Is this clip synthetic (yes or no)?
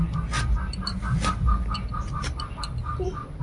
no